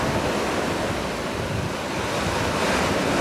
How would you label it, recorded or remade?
recorded